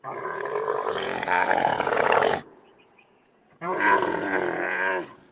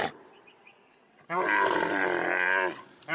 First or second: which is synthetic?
first